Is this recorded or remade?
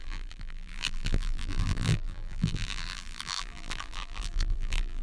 remade